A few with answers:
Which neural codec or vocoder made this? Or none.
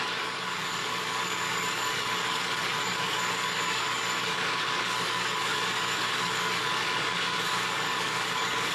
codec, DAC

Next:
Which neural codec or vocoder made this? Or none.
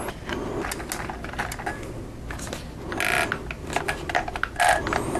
none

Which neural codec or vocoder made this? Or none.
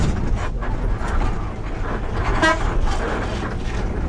none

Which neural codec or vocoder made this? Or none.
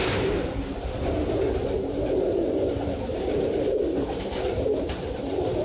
none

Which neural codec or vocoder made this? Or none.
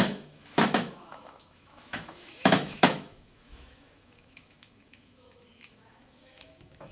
autoencoder, DAC-VAE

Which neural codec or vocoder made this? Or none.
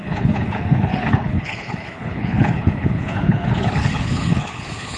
codec, HILCodec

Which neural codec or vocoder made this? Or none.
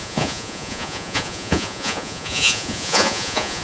vocoder, Vocos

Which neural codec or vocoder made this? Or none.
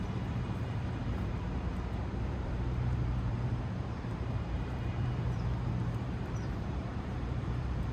vocoder, BigVGAN v2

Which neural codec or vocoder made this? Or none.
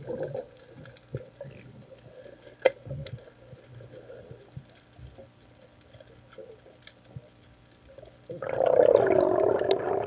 none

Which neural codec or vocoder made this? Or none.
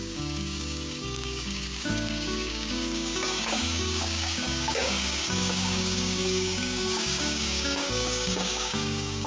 codec, DAC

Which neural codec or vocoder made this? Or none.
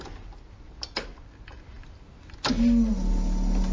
none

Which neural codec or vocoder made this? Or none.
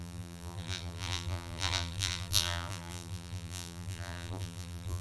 vocoder, BigVGAN v2